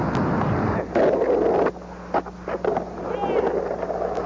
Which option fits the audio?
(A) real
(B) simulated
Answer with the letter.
A